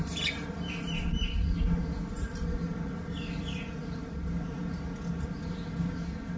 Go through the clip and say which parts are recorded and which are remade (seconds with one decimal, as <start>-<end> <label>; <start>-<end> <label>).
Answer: 0.0-6.4 recorded